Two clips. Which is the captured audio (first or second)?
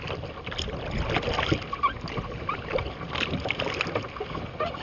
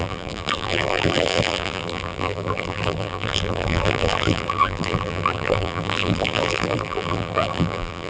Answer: first